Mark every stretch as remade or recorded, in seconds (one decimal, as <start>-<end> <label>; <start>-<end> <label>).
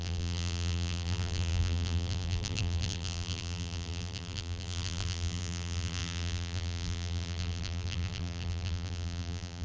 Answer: 0.0-9.6 remade